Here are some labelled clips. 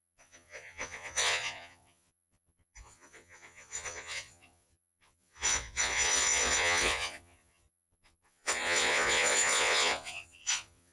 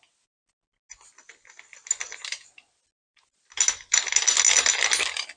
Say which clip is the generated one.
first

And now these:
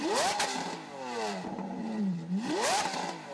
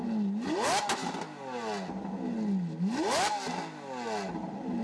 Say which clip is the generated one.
first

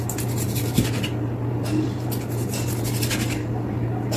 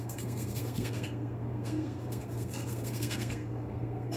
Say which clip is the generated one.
second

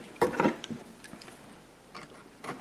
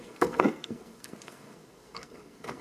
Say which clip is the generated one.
second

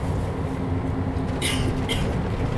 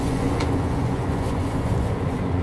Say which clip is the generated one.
second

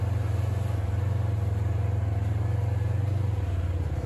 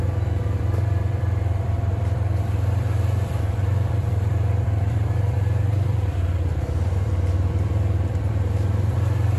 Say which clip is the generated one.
second